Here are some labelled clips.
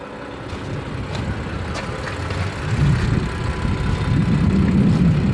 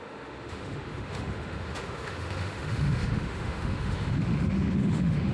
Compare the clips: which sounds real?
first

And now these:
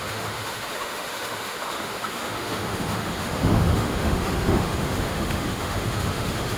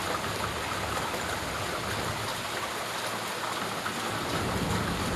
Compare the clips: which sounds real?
second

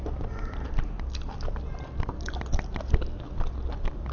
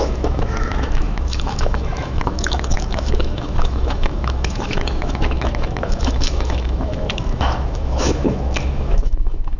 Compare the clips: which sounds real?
first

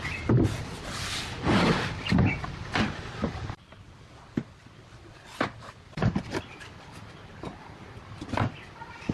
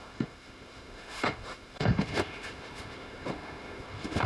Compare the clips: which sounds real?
first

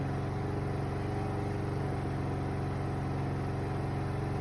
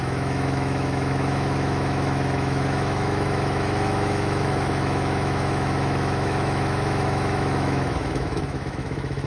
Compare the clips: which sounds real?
first